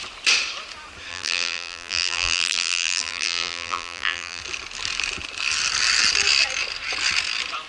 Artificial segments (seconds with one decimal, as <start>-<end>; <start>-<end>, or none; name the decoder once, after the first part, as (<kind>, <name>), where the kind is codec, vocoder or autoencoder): 1.1-4.4 (vocoder, BigVGAN v2)